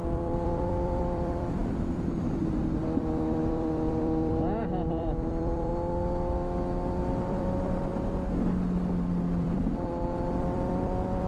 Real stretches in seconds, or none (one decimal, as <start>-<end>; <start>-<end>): 5.7-7.3; 7.9-9.4